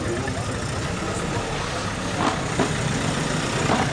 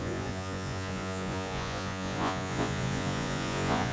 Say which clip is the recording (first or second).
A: first